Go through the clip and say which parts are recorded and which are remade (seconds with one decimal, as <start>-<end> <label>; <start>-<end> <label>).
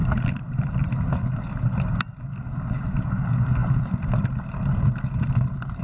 0.0-5.8 recorded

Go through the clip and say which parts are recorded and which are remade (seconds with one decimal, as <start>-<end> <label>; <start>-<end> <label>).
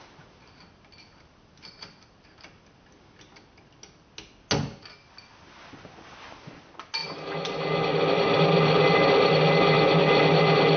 0.0-10.8 recorded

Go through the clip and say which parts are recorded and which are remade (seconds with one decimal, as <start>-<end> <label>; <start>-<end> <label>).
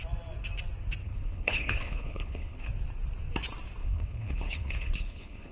0.0-1.0 recorded; 1.0-2.7 remade; 2.7-3.8 recorded; 3.8-5.5 remade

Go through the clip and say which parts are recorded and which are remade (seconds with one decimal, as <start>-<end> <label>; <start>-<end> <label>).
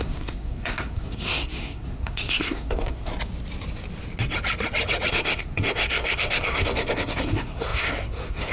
0.0-3.1 remade; 3.1-5.1 recorded; 5.1-8.5 remade